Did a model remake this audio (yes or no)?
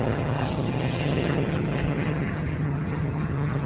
yes